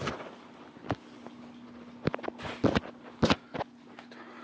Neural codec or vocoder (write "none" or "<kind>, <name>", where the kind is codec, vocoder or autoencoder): none